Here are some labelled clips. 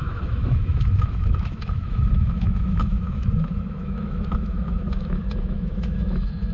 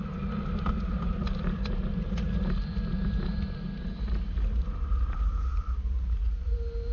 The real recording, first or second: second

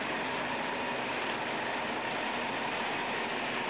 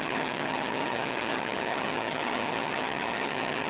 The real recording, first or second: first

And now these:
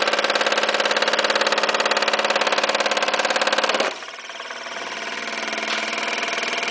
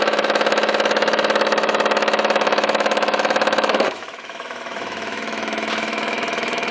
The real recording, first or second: first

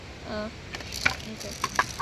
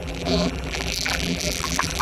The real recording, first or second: first